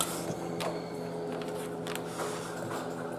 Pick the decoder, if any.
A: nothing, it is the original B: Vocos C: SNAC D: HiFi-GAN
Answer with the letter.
A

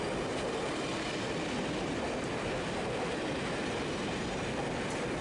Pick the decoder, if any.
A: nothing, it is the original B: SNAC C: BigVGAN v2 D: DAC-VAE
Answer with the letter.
A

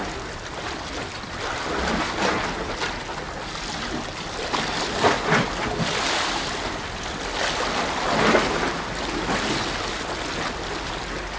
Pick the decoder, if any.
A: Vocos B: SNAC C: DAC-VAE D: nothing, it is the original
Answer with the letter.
D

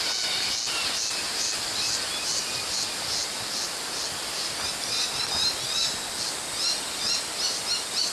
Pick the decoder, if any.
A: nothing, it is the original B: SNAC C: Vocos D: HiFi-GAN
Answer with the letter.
A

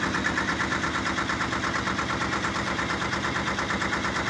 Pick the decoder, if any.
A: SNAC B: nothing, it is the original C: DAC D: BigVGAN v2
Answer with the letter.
B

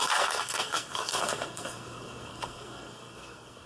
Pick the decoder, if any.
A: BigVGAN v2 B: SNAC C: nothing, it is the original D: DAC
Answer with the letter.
B